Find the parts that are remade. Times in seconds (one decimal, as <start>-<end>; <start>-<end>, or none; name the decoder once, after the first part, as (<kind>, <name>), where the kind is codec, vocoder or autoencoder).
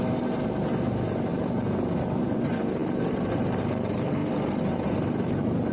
4.2-5.7 (vocoder, BigVGAN v2)